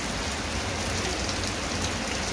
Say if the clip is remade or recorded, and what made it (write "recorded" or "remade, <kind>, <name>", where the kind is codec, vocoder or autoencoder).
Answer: recorded